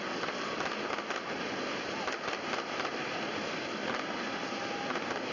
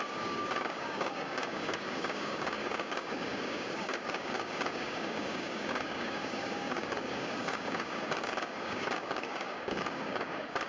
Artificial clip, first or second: second